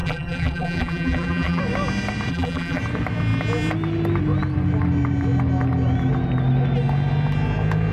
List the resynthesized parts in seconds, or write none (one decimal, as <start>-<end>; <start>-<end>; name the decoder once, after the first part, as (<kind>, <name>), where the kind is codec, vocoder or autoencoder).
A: 0.0-1.6 (vocoder, BigVGAN v2); 2.3-2.8